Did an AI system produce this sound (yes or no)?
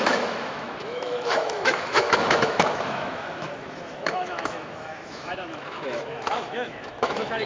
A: yes